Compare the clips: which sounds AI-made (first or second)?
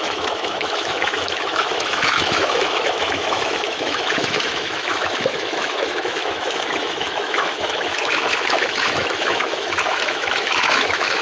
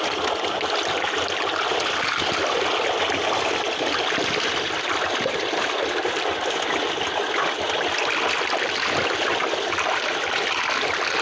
first